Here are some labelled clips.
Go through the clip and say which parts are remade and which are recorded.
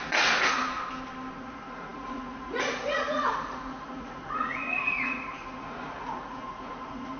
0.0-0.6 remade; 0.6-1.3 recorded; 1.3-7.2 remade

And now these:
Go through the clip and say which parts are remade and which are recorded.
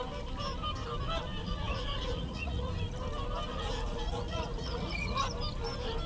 0.0-1.4 recorded; 1.4-2.7 remade; 2.7-3.5 recorded; 3.5-5.2 remade; 5.2-6.1 recorded